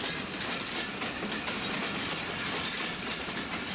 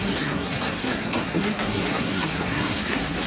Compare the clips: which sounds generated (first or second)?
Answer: second